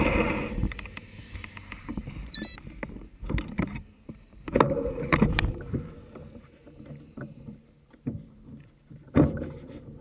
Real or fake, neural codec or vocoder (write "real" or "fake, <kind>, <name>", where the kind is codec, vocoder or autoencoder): fake, vocoder, BigVGAN v2